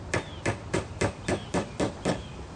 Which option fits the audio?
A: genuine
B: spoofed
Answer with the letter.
A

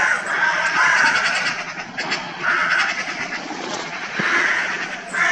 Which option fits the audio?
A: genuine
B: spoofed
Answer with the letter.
B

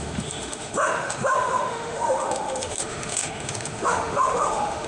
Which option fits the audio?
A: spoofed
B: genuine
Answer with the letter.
A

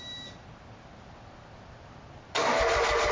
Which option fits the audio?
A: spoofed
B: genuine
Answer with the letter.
B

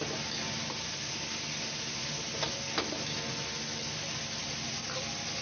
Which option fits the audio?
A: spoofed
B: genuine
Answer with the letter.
B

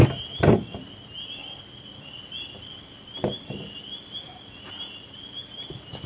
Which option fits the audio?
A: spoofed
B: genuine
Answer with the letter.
B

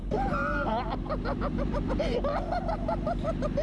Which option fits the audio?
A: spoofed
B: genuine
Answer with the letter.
B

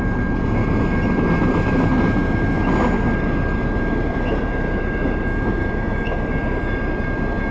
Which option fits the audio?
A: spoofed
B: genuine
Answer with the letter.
B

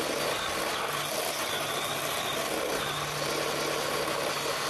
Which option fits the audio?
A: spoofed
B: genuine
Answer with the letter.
B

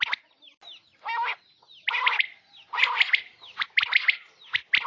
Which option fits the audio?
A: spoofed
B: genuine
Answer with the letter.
B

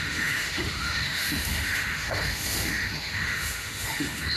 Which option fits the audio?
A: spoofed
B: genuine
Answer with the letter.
A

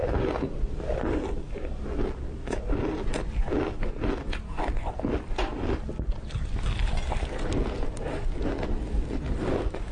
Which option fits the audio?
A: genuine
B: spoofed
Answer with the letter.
A